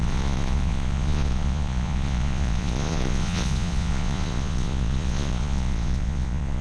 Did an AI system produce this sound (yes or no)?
yes